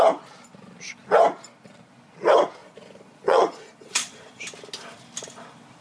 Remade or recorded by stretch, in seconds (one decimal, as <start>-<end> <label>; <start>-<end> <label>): 0.0-2.6 recorded; 2.6-4.4 remade; 4.4-5.8 recorded